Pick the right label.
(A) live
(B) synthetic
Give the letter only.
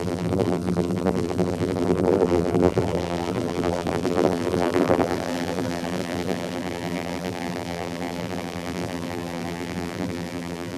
B